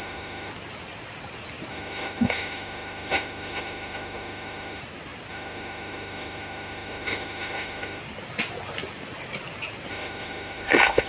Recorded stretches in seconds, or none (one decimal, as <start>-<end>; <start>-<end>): 0.5-1.7; 4.8-5.3; 8.0-9.9